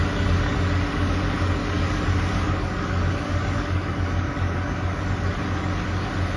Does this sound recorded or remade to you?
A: remade